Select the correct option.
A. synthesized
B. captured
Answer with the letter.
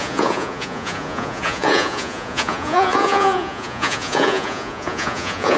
A